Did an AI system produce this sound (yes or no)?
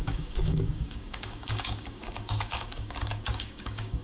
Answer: yes